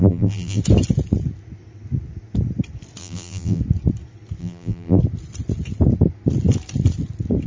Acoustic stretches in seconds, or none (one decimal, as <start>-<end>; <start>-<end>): 0.6-3.0; 3.6-4.4; 5.0-7.5